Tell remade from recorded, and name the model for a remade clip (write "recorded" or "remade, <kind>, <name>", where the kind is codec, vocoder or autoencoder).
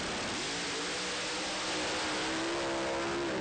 recorded